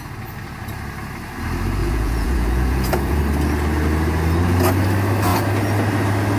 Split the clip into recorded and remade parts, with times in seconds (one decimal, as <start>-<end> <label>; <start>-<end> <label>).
0.0-1.8 recorded; 1.8-3.2 remade; 3.2-6.4 recorded